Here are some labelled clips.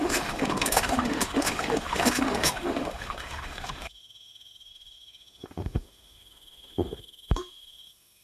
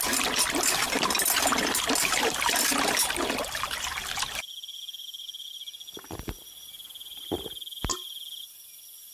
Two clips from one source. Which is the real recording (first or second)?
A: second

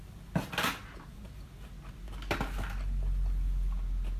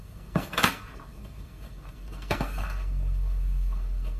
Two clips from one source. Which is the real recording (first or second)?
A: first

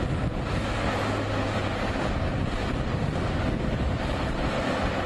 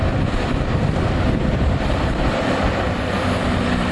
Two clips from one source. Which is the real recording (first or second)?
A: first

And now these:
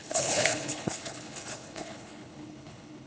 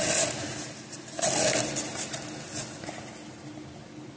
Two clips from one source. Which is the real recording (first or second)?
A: second